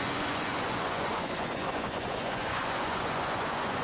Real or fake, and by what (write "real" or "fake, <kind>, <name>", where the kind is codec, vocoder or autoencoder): fake, vocoder, Vocos